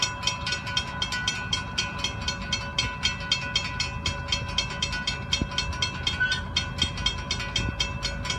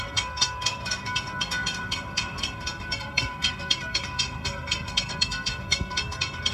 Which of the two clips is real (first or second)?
first